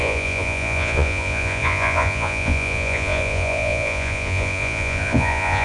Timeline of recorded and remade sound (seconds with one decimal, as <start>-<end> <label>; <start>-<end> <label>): 0.0-5.6 remade